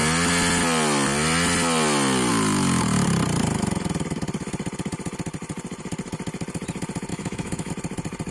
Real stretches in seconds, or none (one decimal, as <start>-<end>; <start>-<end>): 0.0-7.1; 7.7-8.3